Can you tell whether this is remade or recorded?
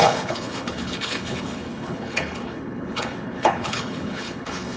remade